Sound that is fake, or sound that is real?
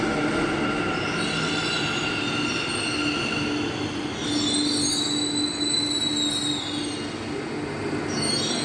real